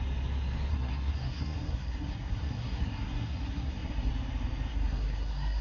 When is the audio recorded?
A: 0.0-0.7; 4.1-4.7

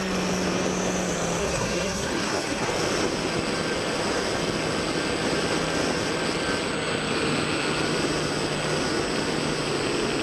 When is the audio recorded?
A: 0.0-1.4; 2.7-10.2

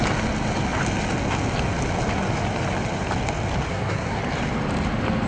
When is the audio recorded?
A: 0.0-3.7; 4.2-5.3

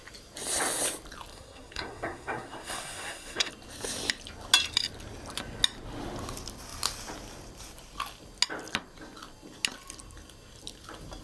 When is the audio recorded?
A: 0.0-1.3; 3.5-11.2